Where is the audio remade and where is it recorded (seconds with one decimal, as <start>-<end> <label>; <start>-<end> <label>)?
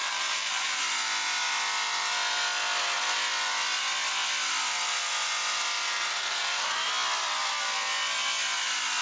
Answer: 0.0-0.8 remade; 0.8-5.9 recorded; 5.9-6.4 remade; 6.4-9.0 recorded